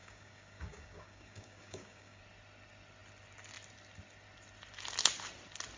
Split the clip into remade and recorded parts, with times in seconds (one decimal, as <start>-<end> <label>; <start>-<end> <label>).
0.0-2.2 remade; 2.2-5.8 recorded